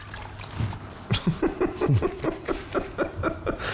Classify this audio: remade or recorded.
recorded